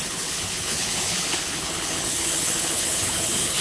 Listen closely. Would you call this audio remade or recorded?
remade